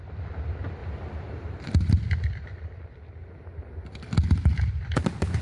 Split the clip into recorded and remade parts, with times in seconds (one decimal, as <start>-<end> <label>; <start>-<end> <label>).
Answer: 0.0-0.8 remade; 0.8-1.9 recorded; 1.9-3.2 remade; 3.2-4.6 recorded; 4.6-5.4 remade